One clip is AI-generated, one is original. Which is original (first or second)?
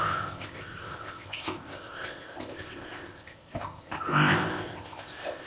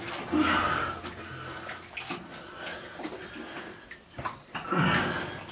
second